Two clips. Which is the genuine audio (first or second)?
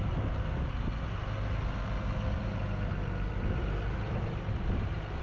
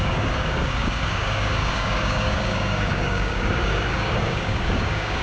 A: first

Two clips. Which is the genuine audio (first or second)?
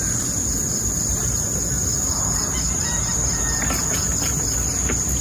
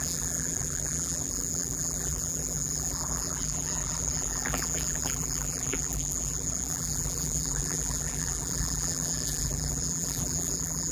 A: first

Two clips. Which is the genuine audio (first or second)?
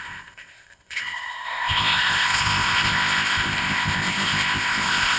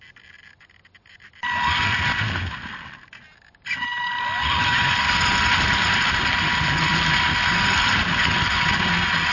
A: second